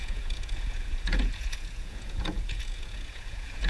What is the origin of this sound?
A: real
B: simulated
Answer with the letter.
B